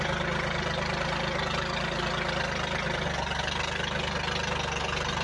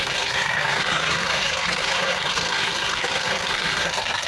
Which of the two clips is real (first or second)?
first